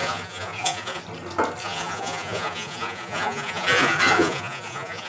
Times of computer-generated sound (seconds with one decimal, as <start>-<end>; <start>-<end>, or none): 0.0-1.0; 1.6-5.1